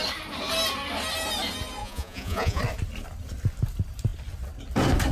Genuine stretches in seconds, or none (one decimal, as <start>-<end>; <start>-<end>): 0.0-1.8; 2.6-5.1